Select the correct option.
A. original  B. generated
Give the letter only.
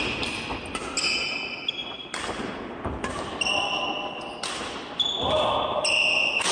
A